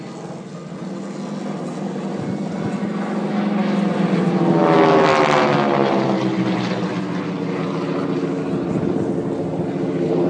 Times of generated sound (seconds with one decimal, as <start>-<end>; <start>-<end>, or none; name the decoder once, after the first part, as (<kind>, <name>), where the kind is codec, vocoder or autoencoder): none